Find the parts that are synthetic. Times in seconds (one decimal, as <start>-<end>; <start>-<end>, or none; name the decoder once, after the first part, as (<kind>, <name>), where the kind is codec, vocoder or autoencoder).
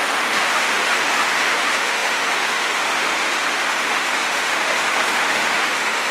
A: 0.0-6.1 (autoencoder, DAC-VAE)